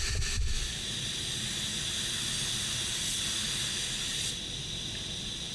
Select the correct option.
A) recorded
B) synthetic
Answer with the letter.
A